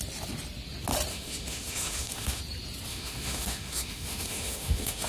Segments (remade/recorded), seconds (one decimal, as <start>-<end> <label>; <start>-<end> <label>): 0.0-1.1 recorded; 1.1-2.4 remade; 2.4-2.9 recorded; 2.9-5.1 remade